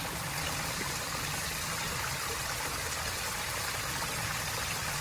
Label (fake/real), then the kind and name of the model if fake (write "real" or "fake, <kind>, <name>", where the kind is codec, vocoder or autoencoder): real